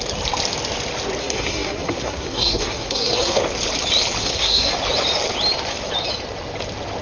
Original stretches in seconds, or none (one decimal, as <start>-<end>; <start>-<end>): 0.0-1.2; 3.4-4.2; 4.7-7.0